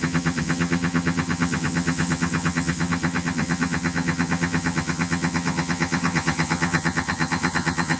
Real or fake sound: fake